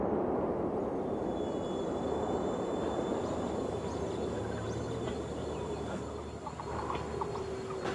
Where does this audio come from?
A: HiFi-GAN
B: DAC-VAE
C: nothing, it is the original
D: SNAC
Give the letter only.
C